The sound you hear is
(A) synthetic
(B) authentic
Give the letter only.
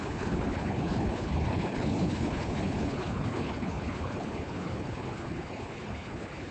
A